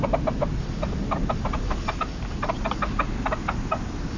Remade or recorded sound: recorded